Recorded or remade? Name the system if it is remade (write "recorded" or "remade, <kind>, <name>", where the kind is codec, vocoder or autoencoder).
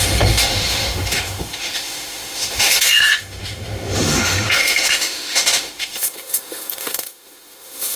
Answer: remade, autoencoder, DAC-VAE